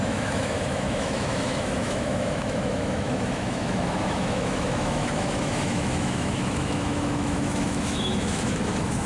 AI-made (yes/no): yes